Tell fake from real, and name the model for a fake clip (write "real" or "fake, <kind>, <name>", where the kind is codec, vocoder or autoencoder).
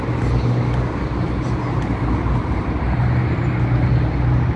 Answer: real